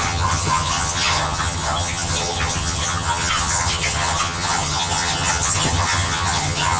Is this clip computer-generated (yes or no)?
yes